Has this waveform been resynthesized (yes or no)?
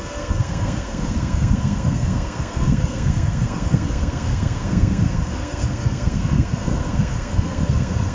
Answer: yes